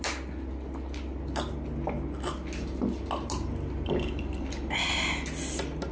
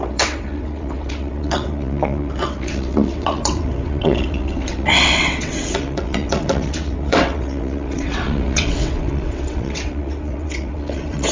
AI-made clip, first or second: second